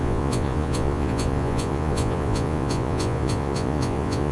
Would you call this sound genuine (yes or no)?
no